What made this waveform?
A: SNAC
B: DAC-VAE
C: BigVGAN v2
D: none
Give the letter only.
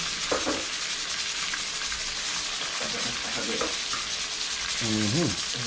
D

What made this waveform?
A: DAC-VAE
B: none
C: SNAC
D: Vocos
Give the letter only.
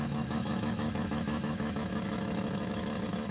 A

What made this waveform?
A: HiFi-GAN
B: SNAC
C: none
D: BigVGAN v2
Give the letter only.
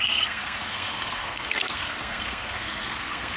B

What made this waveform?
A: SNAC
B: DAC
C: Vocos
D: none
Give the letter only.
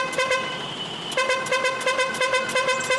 D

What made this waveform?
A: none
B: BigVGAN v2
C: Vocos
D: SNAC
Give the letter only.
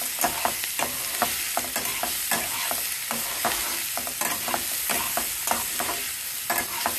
A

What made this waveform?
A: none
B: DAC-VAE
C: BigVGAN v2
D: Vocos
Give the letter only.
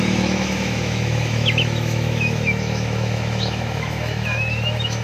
B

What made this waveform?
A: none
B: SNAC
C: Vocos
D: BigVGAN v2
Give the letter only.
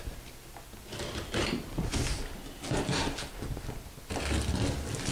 A